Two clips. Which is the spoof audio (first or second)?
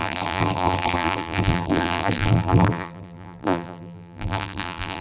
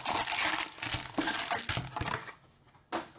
first